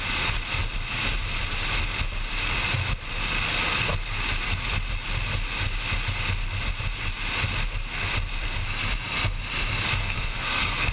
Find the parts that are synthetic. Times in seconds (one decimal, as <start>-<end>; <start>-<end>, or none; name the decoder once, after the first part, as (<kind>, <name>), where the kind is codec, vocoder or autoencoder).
10.0-10.9 (codec, SNAC)